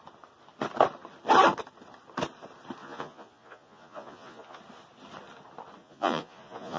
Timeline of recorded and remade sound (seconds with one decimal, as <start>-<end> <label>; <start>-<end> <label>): 0.0-2.8 recorded; 2.8-4.6 remade; 4.6-5.8 recorded; 5.8-6.8 remade